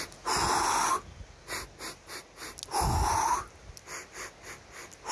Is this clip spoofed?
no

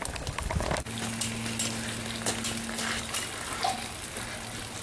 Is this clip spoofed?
no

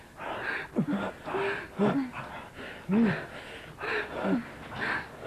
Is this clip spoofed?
no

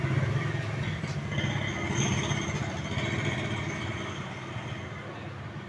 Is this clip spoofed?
no